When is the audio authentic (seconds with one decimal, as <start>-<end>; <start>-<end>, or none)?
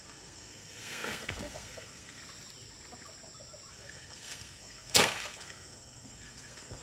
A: 2.2-3.7